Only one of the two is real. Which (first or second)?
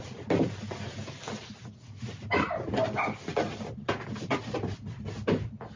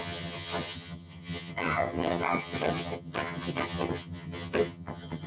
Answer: first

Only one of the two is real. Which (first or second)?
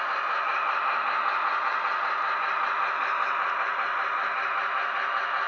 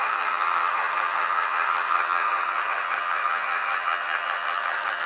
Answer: first